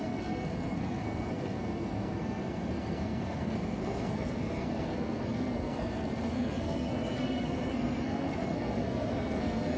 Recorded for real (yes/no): no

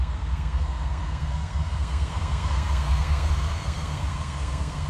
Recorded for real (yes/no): no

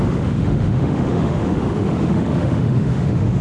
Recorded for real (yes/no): no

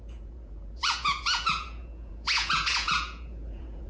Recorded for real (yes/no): no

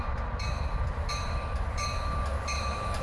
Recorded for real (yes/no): yes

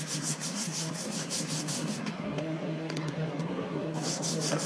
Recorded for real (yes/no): no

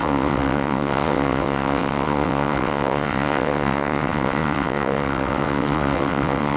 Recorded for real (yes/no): no